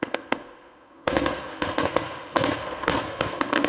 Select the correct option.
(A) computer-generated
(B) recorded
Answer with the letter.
A